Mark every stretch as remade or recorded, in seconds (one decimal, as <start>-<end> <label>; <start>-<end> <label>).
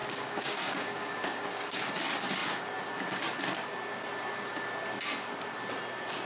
0.0-1.8 remade; 1.8-6.3 recorded